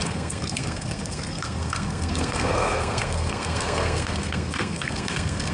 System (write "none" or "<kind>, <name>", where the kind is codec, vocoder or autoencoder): codec, SNAC